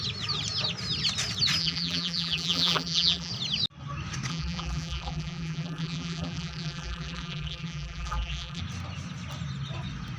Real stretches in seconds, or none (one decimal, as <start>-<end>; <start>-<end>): 0.0-1.6; 3.3-4.3; 8.6-10.2